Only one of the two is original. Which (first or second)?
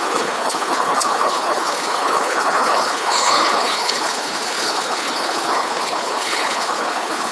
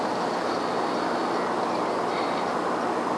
second